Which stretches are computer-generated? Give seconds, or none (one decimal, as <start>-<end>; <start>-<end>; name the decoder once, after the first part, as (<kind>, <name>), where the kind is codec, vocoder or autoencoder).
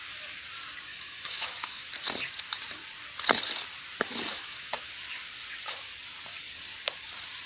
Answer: 0.9-1.9 (autoencoder, DAC-VAE); 4.3-4.9